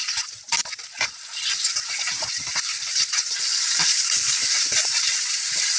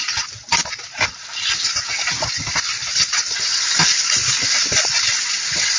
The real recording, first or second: second